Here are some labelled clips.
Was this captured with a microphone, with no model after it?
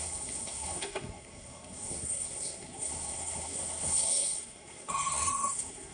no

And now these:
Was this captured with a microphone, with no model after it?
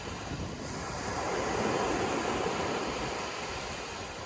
yes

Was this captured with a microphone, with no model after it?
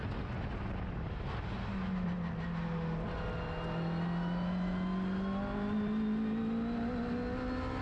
yes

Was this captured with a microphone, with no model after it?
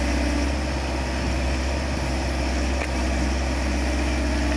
yes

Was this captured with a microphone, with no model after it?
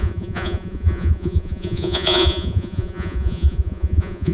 no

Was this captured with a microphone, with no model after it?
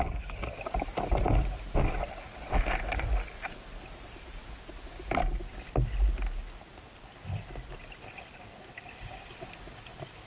yes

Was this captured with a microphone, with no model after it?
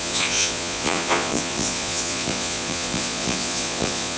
no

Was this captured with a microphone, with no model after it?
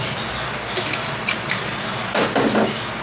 yes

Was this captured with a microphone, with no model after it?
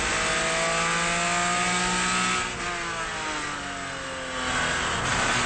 yes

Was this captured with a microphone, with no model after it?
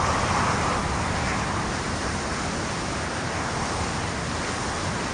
yes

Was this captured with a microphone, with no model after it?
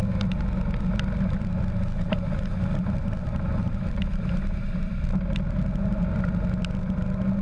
yes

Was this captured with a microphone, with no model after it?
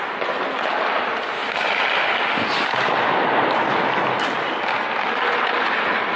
yes